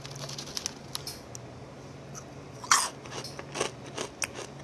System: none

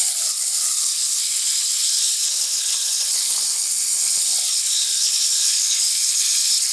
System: codec, HILCodec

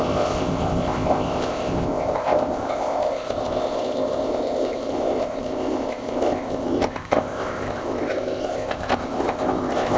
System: codec, ZipCodec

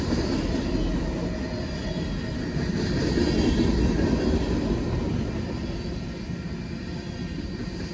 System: none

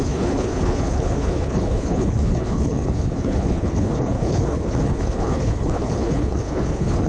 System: codec, HILCodec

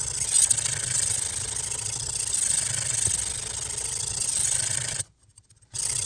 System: none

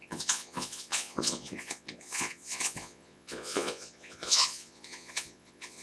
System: vocoder, Vocos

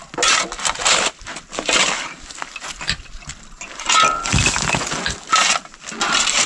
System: none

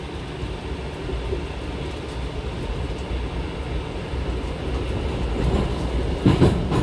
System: none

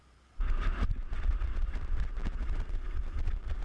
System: vocoder, BigVGAN v2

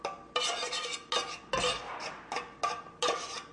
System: none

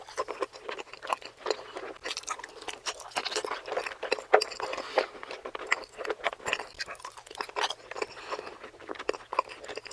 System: none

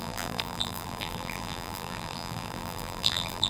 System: vocoder, BigVGAN v2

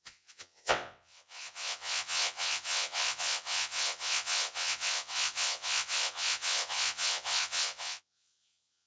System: vocoder, WaveNeXt